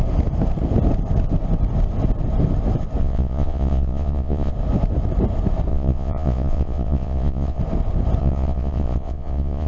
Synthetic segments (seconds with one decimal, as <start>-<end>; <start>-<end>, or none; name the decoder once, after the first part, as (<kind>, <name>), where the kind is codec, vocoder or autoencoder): 3.0-4.5 (vocoder, Vocos); 5.7-7.6; 8.2-9.7